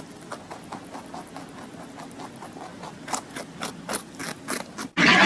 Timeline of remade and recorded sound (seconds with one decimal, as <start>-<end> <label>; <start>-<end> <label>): 0.0-5.3 recorded